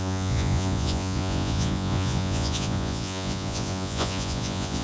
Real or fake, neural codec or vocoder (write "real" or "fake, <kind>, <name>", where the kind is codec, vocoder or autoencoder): fake, vocoder, Vocos